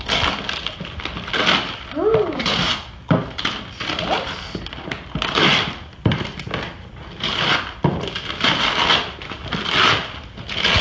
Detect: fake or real real